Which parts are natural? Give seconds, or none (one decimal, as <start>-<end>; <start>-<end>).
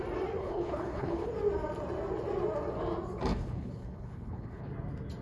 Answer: 0.0-0.4; 1.3-3.3; 4.7-5.2